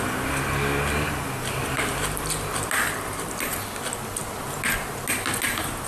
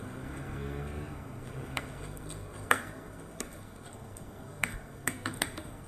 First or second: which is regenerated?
second